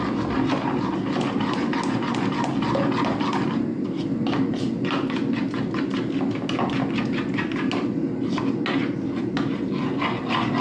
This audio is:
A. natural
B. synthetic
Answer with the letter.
A